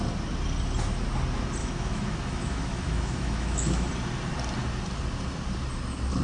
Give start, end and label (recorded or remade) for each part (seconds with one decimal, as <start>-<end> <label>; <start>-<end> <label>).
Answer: 0.0-1.6 recorded; 1.6-3.9 remade; 3.9-6.2 recorded